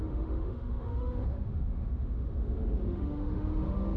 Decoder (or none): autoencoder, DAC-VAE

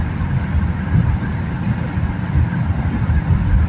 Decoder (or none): none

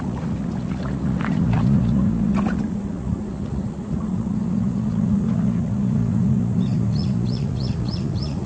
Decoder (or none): vocoder, Vocos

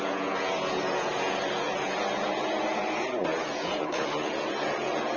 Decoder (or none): vocoder, Vocos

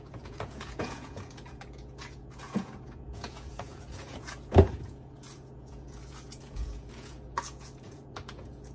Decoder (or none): vocoder, Vocos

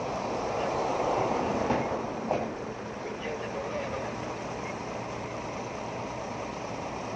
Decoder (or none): vocoder, BigVGAN v2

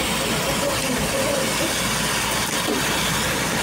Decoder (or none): none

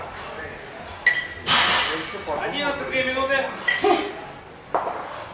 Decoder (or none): none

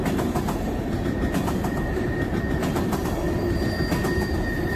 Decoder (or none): none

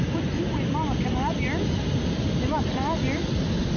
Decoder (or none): none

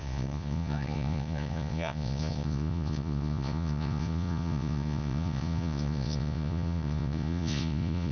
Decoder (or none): vocoder, Vocos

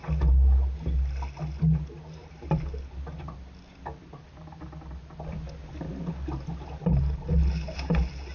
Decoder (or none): none